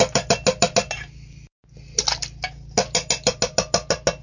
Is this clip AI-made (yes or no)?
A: no